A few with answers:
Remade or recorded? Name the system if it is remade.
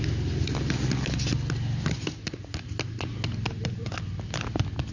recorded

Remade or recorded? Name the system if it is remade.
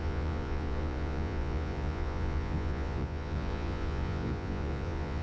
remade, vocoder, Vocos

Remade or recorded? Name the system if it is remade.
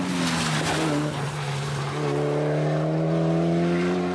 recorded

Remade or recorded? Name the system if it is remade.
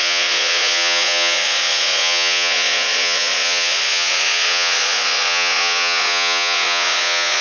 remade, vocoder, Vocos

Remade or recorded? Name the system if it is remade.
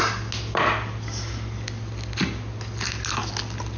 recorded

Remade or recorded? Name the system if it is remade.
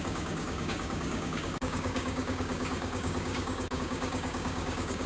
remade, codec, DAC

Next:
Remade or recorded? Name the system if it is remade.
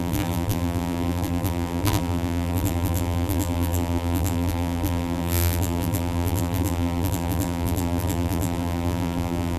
remade, vocoder, BigVGAN v2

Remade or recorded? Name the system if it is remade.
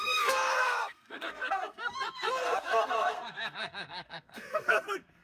remade, codec, SNAC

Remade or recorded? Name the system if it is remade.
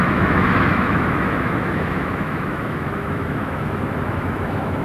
remade, autoencoder, DAC-VAE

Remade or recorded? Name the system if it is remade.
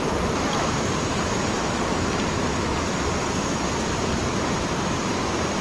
recorded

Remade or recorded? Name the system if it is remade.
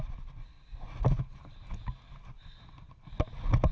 recorded